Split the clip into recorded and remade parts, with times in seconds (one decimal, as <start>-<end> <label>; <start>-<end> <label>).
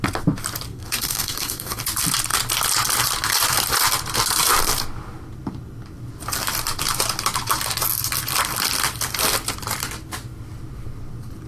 0.0-0.7 recorded; 0.7-1.8 remade; 1.8-11.5 recorded